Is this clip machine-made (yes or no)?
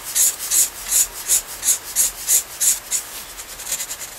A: no